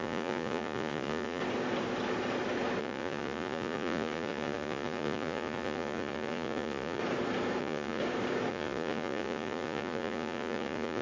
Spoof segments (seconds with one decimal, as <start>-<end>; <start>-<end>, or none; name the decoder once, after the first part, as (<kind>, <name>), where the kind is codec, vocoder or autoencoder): 0.0-1.4 (vocoder, Vocos); 2.8-7.0; 7.6-8.0; 8.5-11.0